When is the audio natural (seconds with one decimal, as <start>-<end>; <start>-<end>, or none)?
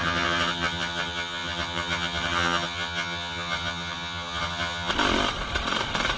4.9-6.2